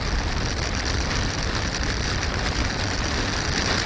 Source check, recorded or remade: recorded